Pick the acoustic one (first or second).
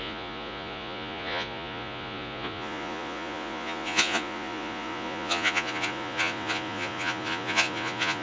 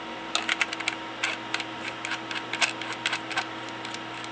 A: second